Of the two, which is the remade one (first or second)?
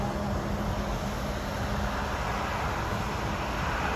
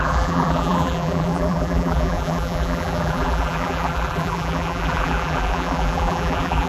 second